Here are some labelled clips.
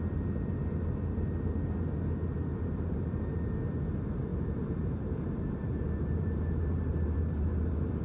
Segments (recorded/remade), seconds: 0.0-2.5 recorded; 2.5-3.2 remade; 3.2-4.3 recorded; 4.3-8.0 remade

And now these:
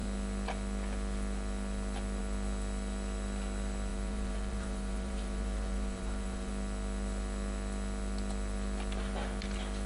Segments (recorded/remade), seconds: 0.0-3.9 recorded; 3.9-6.5 remade; 6.5-9.9 recorded

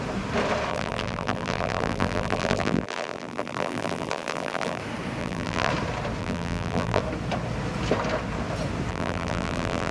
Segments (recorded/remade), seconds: 0.0-0.7 recorded; 0.7-4.8 remade; 4.8-5.2 recorded; 5.2-5.7 remade; 5.7-6.2 recorded; 6.2-7.0 remade; 7.0-8.9 recorded; 8.9-9.9 remade